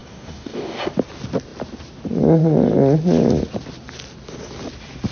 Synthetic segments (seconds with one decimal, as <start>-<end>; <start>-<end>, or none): 0.0-0.8